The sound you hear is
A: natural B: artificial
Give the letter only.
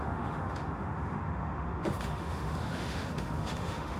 B